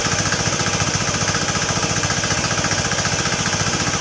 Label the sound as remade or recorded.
recorded